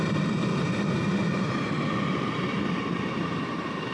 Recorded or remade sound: remade